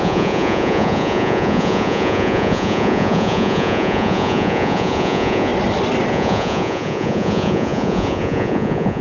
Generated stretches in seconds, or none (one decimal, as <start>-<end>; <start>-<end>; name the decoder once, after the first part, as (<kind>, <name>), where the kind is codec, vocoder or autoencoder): 0.0-5.5 (vocoder, Vocos); 6.1-9.0